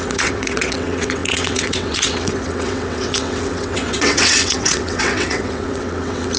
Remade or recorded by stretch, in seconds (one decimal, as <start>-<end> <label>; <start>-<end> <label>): 0.0-6.4 remade